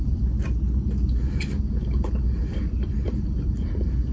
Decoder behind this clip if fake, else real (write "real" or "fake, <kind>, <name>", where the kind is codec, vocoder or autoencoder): real